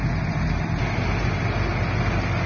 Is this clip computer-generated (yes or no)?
no